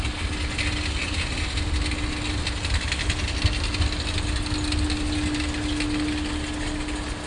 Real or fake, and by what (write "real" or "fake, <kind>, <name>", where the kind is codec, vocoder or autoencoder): real